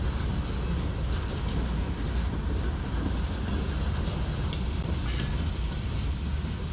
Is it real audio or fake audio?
real